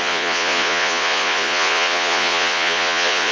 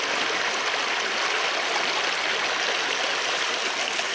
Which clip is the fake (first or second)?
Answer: first